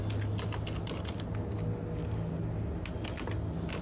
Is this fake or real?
real